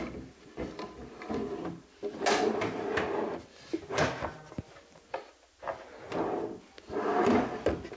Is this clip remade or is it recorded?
recorded